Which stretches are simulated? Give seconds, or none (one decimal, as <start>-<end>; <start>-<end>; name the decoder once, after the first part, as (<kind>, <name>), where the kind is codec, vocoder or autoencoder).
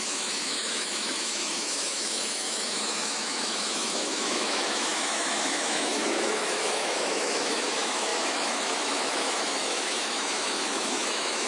0.0-11.5 (autoencoder, DAC-VAE)